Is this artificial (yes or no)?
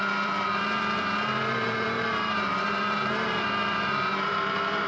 yes